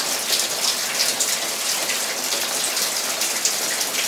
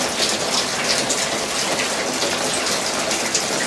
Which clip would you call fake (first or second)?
first